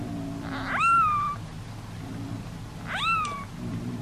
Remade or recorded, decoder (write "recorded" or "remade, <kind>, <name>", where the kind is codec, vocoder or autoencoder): recorded